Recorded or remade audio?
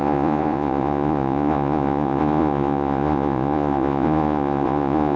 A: remade